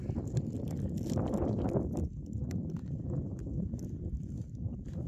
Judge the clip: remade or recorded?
recorded